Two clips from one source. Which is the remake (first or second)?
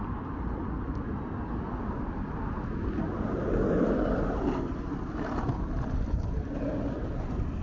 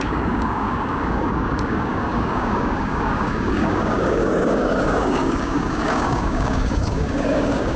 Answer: second